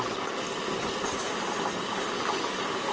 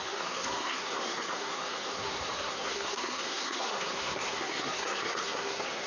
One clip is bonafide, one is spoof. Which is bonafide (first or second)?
first